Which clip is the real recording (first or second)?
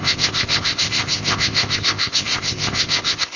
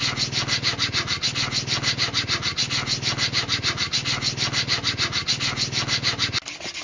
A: second